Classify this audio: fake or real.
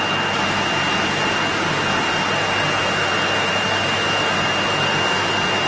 real